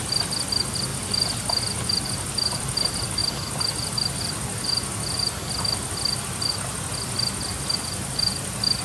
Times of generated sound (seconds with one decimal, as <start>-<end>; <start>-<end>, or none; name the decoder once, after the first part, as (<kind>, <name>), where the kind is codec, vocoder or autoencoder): none